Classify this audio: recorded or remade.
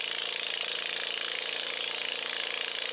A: recorded